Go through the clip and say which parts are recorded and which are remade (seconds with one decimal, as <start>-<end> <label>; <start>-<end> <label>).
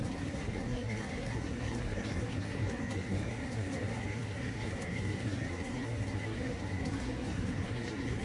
0.0-8.2 remade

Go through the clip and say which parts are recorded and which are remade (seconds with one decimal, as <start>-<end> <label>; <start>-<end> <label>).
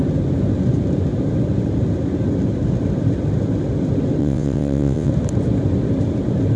0.0-4.2 recorded; 4.2-5.1 remade; 5.1-6.6 recorded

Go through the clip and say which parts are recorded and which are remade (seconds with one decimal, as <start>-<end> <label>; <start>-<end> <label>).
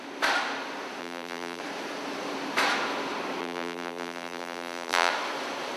0.0-1.0 recorded; 1.0-1.6 remade; 1.6-3.4 recorded; 3.4-5.1 remade; 5.1-5.8 recorded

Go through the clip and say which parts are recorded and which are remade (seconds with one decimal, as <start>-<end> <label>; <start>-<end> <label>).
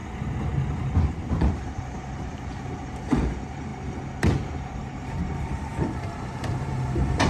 0.0-1.1 recorded; 1.1-3.7 remade; 3.7-4.8 recorded; 4.8-7.3 remade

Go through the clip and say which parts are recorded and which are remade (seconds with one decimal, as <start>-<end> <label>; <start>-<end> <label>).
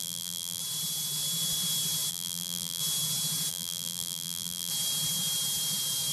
0.0-0.6 remade; 0.6-2.1 recorded; 2.1-2.8 remade; 2.8-3.5 recorded; 3.5-4.7 remade; 4.7-6.1 recorded